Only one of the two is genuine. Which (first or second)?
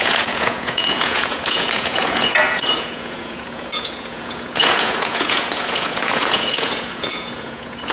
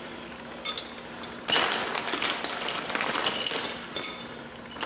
second